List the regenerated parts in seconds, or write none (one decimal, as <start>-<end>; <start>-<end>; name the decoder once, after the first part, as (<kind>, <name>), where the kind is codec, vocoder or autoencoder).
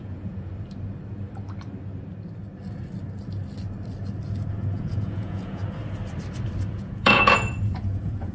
0.0-0.5 (vocoder, Vocos); 4.5-5.6; 6.7-8.3